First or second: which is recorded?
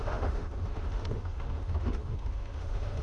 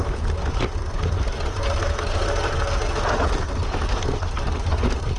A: second